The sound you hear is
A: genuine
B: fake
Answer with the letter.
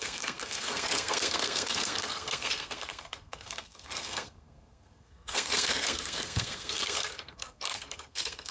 B